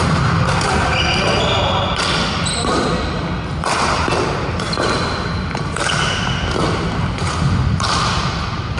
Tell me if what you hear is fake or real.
real